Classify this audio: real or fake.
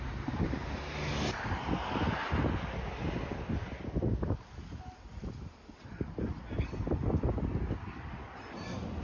real